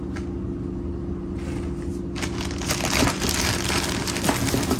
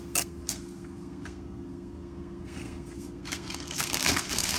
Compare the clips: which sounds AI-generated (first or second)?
second